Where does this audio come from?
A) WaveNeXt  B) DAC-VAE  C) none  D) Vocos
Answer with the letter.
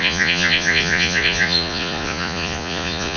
D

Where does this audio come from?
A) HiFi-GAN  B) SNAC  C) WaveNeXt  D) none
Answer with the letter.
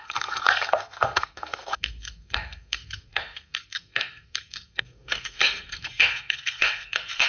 B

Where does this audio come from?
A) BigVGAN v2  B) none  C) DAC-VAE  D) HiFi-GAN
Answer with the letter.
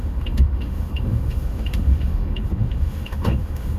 C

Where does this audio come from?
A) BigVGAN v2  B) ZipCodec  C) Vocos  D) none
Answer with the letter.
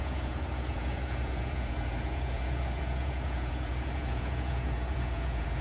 C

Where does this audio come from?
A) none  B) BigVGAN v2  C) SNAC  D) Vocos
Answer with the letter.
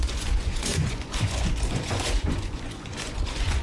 D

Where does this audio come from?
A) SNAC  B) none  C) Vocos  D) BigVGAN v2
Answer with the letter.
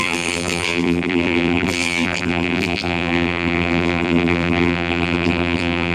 D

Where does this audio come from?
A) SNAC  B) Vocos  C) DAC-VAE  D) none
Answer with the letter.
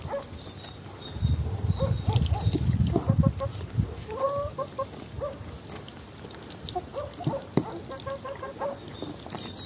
D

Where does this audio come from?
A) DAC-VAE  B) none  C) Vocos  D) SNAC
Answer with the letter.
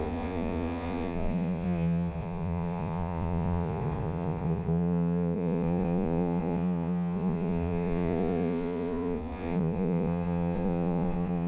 C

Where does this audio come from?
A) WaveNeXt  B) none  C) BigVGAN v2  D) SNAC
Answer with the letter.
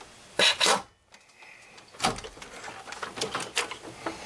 B